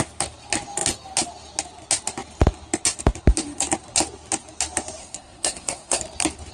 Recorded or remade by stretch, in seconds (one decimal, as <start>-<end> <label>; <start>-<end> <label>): 0.0-5.0 recorded; 5.0-6.0 remade; 6.0-6.5 recorded

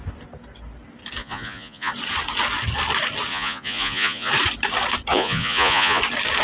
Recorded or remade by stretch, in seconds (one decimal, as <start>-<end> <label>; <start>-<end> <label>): 0.0-1.2 recorded; 1.2-1.9 remade; 1.9-3.3 recorded; 3.3-4.3 remade; 4.3-5.1 recorded; 5.1-6.0 remade; 6.0-6.4 recorded

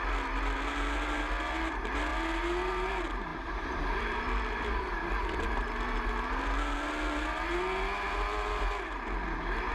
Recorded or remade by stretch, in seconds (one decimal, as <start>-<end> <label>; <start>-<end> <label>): 0.0-3.3 recorded; 3.3-4.9 remade; 4.9-9.7 recorded

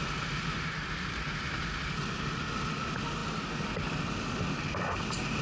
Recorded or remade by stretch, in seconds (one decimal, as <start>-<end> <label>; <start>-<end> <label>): 0.0-0.5 recorded; 0.5-1.7 remade; 1.7-5.4 recorded

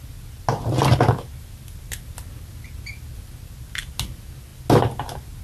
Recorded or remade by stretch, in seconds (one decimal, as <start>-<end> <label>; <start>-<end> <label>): 0.0-5.4 recorded